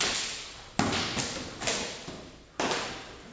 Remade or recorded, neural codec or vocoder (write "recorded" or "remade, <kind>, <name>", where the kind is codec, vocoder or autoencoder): recorded